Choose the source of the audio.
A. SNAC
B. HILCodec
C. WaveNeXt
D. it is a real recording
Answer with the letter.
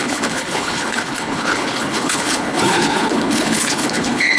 B